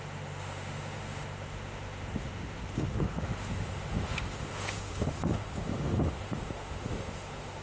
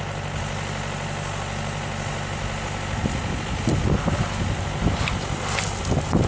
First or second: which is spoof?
first